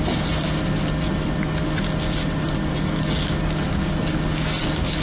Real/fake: real